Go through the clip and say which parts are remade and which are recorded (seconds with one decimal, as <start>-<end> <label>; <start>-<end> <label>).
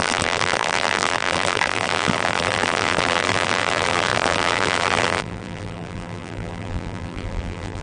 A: 0.0-7.8 remade